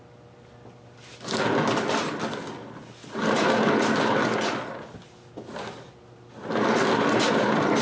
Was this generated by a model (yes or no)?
no